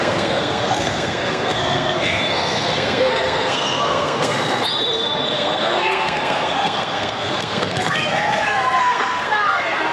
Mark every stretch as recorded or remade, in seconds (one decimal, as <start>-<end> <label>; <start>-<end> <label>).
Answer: 0.0-4.7 remade; 4.7-5.3 recorded; 5.3-9.9 remade